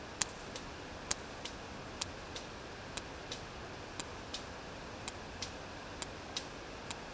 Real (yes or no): yes